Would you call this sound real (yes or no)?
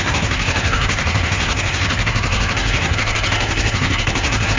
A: no